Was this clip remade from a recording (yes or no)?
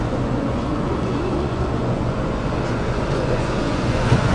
yes